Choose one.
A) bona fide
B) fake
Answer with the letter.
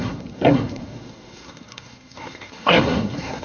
B